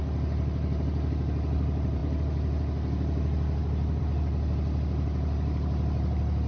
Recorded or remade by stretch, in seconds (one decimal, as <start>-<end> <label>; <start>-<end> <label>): 0.0-6.5 recorded